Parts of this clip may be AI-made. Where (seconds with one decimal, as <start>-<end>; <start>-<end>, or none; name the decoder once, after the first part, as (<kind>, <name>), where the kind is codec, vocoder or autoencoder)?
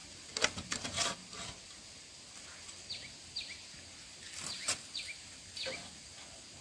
none